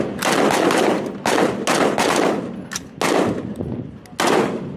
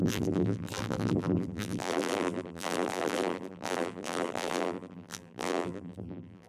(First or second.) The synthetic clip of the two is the second